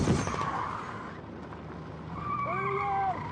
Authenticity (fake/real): real